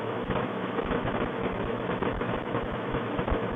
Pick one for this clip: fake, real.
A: fake